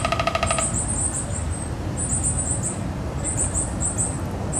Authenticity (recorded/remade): recorded